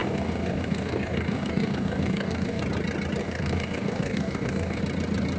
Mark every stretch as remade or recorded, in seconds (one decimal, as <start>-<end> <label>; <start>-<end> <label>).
0.0-2.6 remade; 2.6-3.2 recorded; 3.2-4.8 remade; 4.8-5.4 recorded